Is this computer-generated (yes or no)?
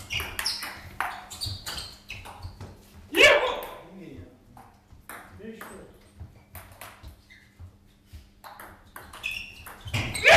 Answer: no